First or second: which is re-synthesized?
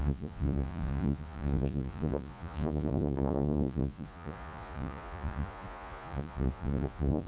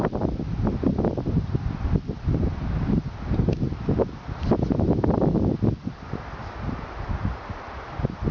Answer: first